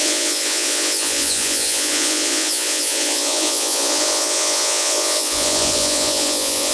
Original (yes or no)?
no